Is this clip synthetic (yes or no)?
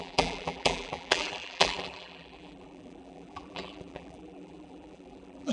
yes